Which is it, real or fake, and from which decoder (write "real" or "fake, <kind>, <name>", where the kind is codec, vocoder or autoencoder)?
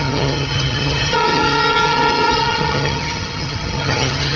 fake, vocoder, HiFi-GAN